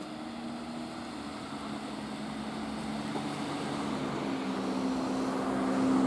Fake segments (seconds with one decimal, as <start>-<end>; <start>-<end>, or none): none